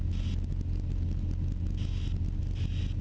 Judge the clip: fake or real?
real